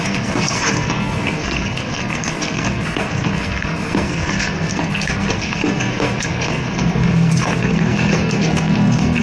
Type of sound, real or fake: fake